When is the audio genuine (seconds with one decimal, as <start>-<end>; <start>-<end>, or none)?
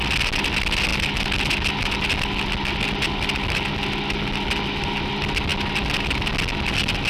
0.0-7.1